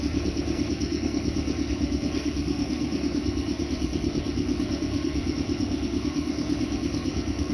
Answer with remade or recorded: remade